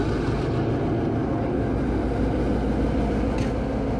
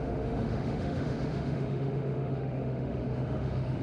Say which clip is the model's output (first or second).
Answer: second